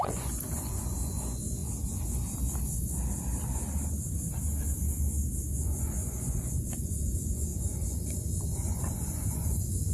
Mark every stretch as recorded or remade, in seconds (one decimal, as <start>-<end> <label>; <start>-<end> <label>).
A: 0.0-1.6 remade; 1.6-5.5 recorded; 5.5-9.9 remade

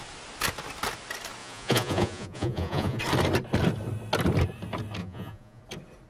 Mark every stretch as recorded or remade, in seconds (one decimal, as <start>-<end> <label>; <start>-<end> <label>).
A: 0.0-1.4 recorded; 1.4-3.0 remade; 3.0-5.0 recorded; 5.0-5.6 remade; 5.6-6.1 recorded

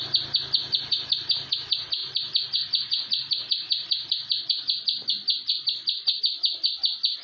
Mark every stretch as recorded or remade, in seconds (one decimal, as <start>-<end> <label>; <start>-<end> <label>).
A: 0.0-7.2 recorded

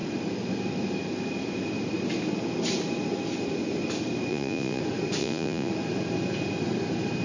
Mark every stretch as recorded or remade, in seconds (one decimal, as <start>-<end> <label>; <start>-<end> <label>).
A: 0.0-4.3 recorded; 4.3-4.8 remade; 4.8-5.2 recorded; 5.2-5.7 remade; 5.7-7.2 recorded

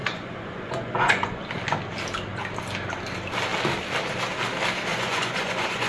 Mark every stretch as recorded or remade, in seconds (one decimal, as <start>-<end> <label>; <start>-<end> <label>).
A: 0.0-1.4 remade; 1.4-4.9 recorded; 4.9-5.9 remade